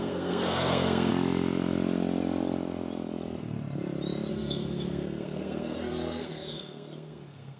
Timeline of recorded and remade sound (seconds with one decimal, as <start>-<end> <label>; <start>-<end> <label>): 0.0-1.1 remade; 1.1-4.3 recorded; 4.3-7.6 remade